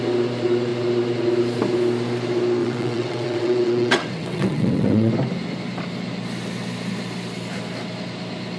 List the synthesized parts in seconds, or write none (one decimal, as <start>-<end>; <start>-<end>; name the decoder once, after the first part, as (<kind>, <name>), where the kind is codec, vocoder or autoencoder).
2.6-5.1 (vocoder, WaveNeXt)